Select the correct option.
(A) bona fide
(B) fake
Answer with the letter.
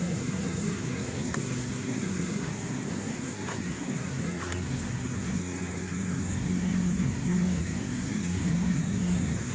B